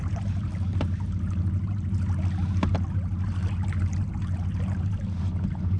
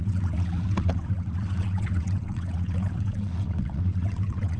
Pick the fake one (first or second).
second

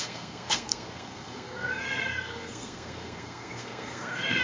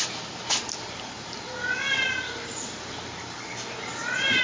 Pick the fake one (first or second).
first